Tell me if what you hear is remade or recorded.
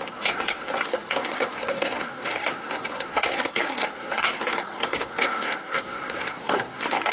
remade